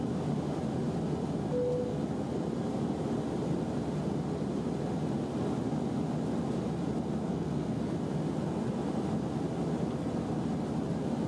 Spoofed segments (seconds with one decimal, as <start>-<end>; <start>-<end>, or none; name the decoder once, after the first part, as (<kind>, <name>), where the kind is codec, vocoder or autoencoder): 7.2-7.8 (codec, SNAC)